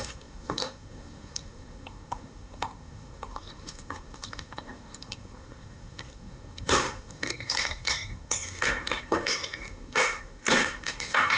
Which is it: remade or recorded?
remade